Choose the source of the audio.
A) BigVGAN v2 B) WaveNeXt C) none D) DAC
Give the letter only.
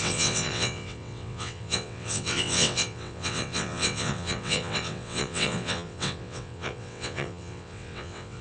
B